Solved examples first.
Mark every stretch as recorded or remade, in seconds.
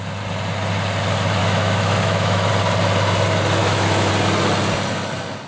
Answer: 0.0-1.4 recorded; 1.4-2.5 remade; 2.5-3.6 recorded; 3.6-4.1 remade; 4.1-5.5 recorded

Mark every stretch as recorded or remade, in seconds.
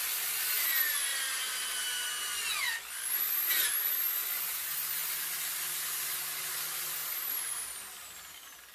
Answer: 0.0-8.7 recorded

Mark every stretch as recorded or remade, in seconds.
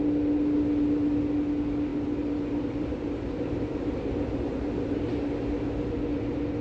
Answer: 0.0-6.6 recorded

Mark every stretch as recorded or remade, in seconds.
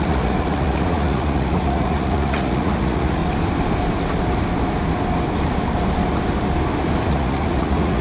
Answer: 0.0-3.2 remade; 3.2-7.1 recorded; 7.1-8.0 remade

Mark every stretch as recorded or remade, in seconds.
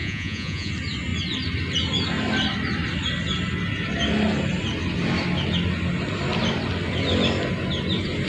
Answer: 0.0-0.7 remade; 0.7-8.3 recorded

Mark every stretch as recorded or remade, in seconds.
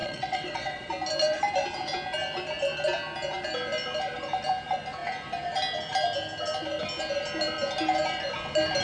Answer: 0.0-0.9 remade; 0.9-8.8 recorded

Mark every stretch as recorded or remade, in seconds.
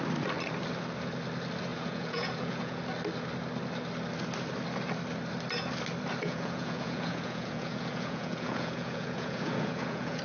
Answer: 0.0-1.7 recorded; 1.7-2.8 remade; 2.8-6.2 recorded; 6.2-10.2 remade